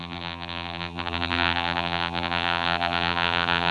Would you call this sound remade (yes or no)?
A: yes